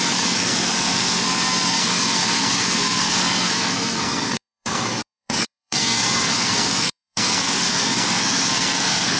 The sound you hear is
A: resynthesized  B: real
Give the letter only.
A